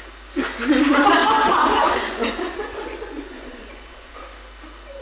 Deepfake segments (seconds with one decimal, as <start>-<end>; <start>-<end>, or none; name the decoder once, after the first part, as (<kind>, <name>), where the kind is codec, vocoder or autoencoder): 1.2-4.2 (vocoder, Vocos)